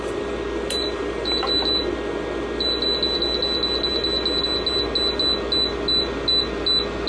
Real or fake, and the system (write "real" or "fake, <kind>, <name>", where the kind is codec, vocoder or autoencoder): real